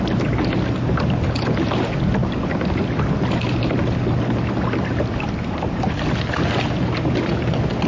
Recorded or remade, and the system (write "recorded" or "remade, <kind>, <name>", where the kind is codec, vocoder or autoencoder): recorded